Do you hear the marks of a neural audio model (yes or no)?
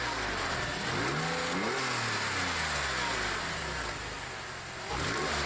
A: no